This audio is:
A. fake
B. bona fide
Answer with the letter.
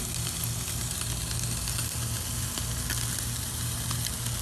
B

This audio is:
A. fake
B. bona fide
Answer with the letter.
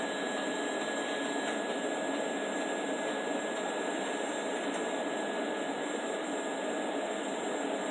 B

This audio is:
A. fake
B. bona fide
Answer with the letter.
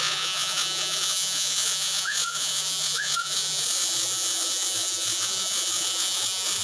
A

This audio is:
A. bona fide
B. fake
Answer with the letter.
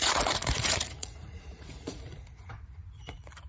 B